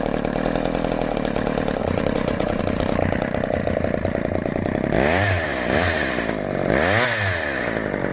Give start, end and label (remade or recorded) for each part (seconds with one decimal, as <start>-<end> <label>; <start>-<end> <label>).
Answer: 0.0-1.8 recorded; 1.8-2.6 remade; 2.6-8.1 recorded